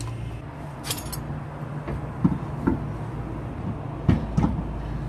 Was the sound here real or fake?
real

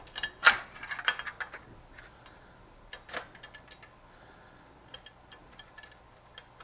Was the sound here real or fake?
real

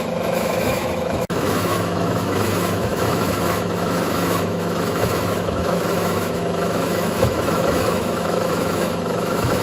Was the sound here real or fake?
fake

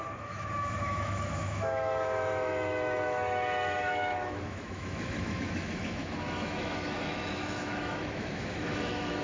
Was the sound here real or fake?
fake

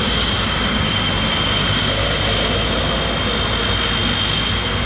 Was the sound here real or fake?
real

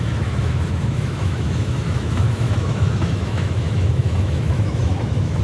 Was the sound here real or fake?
fake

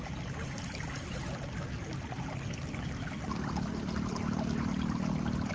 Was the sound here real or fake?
real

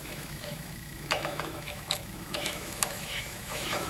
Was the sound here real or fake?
fake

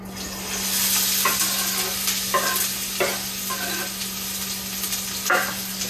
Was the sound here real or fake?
real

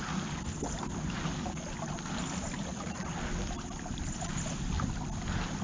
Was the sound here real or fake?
real